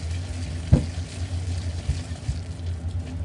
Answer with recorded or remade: recorded